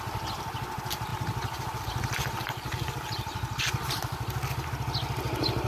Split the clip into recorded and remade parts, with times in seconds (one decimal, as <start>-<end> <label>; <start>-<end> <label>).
0.0-5.7 recorded